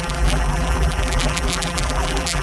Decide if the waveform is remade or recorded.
remade